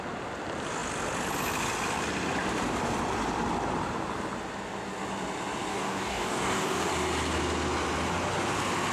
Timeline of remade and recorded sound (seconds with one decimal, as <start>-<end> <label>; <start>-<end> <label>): 0.0-5.7 recorded; 5.7-6.9 remade; 6.9-8.9 recorded